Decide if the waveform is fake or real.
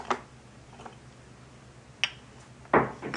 real